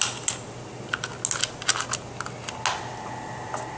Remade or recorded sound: recorded